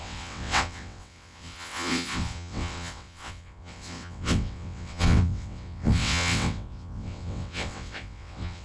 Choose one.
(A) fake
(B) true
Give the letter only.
A